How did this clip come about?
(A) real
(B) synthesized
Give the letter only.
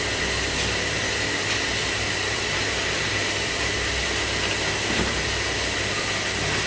A